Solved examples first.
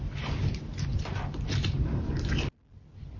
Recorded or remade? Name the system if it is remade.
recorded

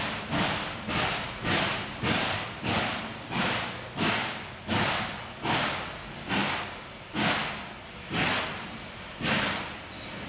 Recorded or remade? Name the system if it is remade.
recorded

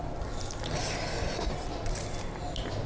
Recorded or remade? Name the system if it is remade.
recorded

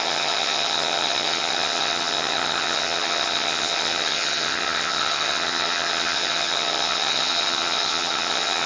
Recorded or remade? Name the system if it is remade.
remade, vocoder, HiFi-GAN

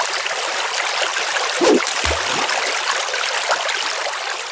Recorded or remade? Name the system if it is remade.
recorded